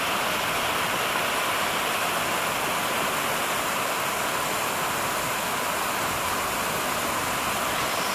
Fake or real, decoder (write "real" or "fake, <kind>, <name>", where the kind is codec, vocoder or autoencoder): real